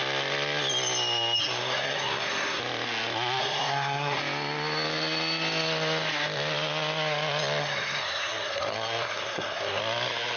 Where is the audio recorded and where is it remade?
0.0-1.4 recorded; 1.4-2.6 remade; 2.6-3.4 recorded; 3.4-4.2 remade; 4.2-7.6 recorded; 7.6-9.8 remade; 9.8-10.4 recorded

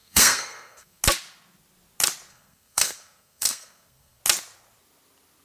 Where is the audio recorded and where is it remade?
0.0-1.0 remade; 1.0-2.3 recorded; 2.3-4.2 remade; 4.2-5.4 recorded

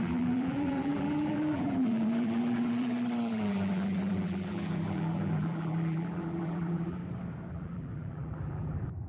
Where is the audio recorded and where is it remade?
0.0-7.0 remade; 7.0-7.5 recorded; 7.5-9.1 remade

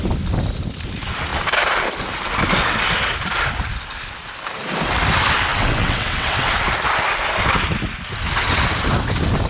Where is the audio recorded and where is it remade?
0.0-5.5 recorded; 5.5-6.5 remade; 6.5-9.5 recorded